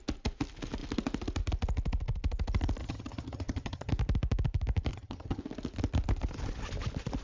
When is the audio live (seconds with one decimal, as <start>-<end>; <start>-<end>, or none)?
0.0-2.8; 3.9-4.9; 5.4-7.2